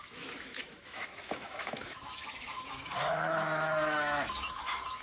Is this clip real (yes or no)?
no